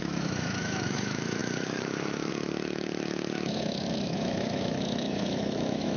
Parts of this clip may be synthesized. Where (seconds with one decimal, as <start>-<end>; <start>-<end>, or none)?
0.0-6.0